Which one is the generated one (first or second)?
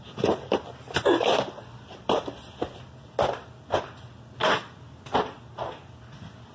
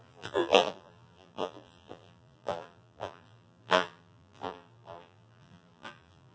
second